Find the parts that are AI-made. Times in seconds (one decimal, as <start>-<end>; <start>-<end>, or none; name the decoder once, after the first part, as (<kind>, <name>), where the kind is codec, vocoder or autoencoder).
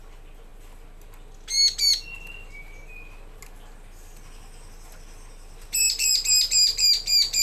none